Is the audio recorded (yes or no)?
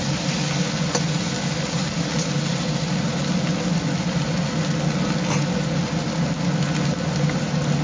yes